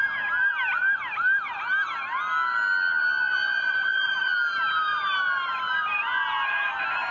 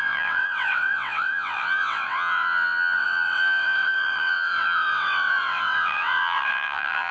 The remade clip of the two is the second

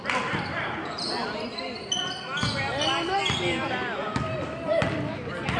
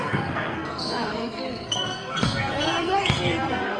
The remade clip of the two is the second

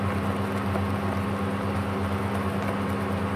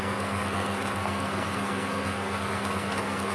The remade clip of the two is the second